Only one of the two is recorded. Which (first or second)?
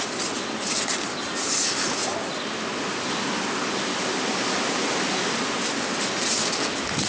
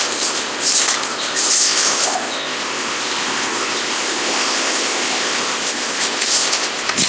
first